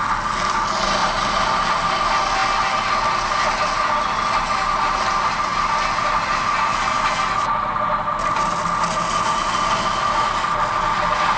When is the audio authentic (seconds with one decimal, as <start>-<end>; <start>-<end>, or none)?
0.0-11.4